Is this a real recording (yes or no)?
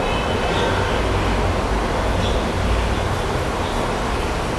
yes